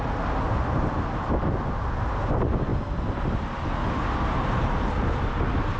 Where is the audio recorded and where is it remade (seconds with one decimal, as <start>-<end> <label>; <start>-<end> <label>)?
0.0-5.8 recorded